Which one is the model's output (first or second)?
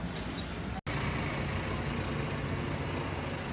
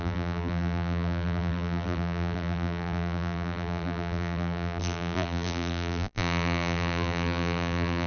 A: second